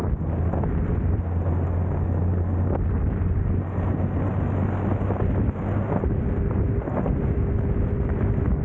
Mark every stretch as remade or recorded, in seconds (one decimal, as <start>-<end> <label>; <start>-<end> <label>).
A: 0.0-8.6 recorded

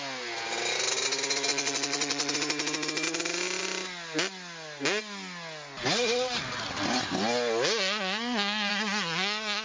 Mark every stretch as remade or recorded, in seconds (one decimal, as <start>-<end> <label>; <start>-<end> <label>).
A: 0.0-1.5 recorded; 1.5-2.3 remade; 2.3-9.6 recorded

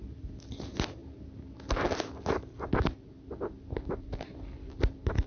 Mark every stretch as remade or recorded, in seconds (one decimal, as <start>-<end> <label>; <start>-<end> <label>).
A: 0.0-5.3 recorded

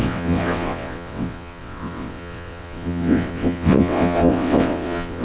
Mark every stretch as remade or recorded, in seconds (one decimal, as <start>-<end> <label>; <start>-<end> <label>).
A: 0.0-5.2 remade

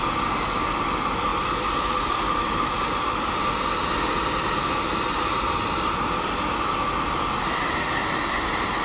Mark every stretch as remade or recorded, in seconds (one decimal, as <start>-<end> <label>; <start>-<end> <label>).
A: 0.0-8.8 recorded

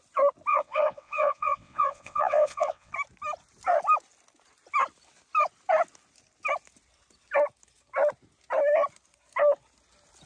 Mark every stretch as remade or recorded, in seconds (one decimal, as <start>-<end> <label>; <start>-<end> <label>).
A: 0.0-0.5 recorded; 0.5-2.9 remade; 2.9-10.3 recorded